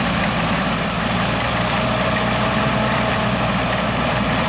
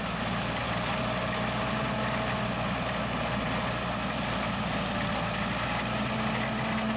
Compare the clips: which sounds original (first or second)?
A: second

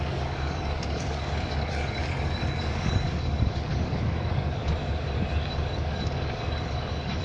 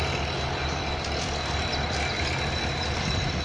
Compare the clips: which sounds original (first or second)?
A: second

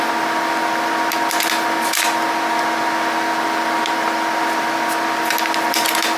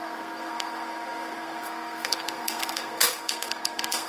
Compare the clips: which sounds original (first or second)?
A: first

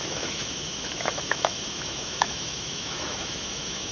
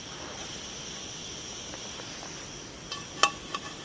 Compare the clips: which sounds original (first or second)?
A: second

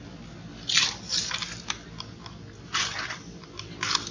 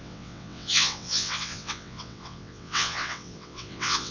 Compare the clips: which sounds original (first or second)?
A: first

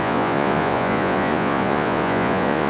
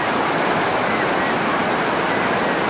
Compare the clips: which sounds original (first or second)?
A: second